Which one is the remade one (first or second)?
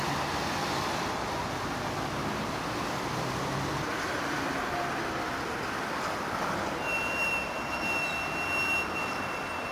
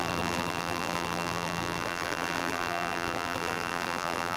second